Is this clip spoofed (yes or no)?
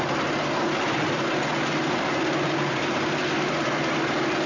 no